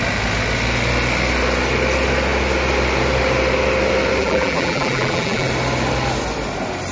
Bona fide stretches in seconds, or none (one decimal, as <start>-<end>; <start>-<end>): 0.0-4.2; 5.5-6.9